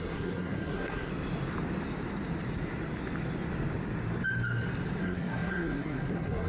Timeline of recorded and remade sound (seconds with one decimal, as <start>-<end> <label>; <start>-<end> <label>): 0.0-1.1 remade; 1.1-5.0 recorded; 5.0-6.5 remade